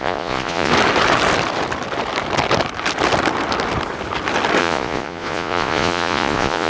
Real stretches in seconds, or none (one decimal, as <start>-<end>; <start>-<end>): 0.7-4.6